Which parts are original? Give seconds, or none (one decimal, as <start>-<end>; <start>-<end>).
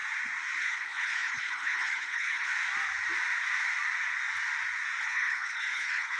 0.0-0.6; 2.5-5.0